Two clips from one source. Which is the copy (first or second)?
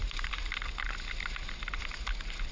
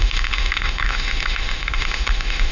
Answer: second